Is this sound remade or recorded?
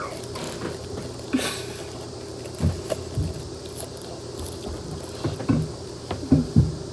recorded